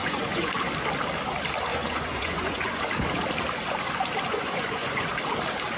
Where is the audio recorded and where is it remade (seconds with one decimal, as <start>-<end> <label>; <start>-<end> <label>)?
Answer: 0.0-0.7 remade; 0.7-1.7 recorded; 1.7-2.8 remade; 2.8-4.3 recorded; 4.3-5.1 remade; 5.1-5.8 recorded

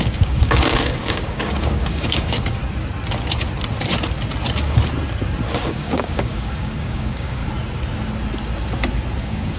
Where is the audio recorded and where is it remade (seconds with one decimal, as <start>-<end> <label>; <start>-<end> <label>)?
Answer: 0.0-2.6 remade; 2.6-5.5 recorded; 5.5-7.4 remade; 7.4-9.2 recorded; 9.2-9.6 remade

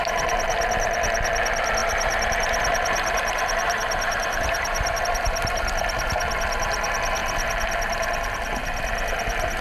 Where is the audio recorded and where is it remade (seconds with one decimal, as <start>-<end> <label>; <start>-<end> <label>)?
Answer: 0.0-1.8 recorded; 1.8-5.0 remade; 5.0-9.6 recorded

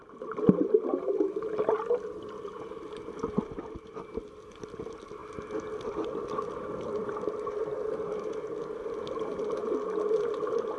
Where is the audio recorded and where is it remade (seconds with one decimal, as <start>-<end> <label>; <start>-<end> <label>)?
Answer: 0.0-5.2 recorded; 5.2-5.8 remade; 5.8-7.0 recorded; 7.0-7.5 remade; 7.5-10.8 recorded

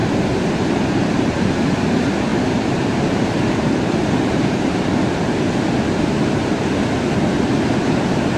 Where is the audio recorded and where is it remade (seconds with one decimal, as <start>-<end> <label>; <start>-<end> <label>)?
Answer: 0.0-1.5 remade; 1.5-2.3 recorded; 2.3-4.8 remade; 4.8-8.4 recorded

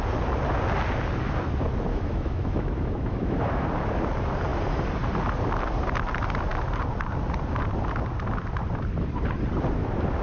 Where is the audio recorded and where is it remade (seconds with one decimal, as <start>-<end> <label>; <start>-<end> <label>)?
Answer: 0.0-1.9 recorded; 1.9-3.4 remade; 3.4-10.2 recorded

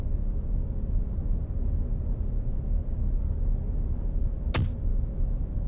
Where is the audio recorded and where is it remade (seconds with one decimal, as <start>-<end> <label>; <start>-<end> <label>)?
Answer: 0.0-5.7 recorded

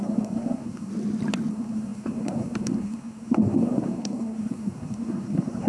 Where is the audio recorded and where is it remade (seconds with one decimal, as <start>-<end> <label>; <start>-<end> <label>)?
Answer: 0.0-0.9 remade; 0.9-1.5 recorded; 1.5-5.7 remade